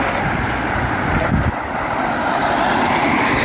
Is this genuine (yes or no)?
yes